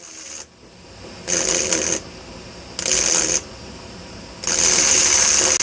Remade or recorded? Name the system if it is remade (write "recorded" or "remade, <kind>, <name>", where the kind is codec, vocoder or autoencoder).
recorded